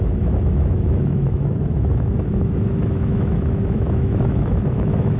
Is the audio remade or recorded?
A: remade